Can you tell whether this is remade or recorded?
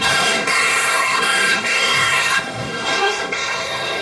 remade